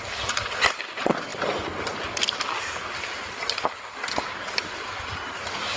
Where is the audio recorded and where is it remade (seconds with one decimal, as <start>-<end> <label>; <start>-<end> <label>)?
0.0-5.8 recorded